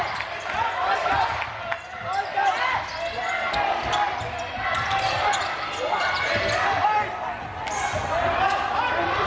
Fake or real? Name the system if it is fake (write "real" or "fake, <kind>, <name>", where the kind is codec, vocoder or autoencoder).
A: real